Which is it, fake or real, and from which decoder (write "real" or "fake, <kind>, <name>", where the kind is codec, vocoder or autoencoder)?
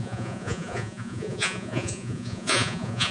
fake, vocoder, Vocos